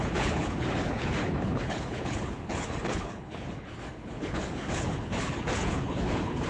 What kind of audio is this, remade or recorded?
remade